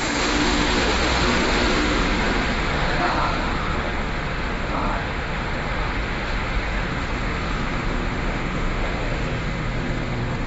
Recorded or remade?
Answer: remade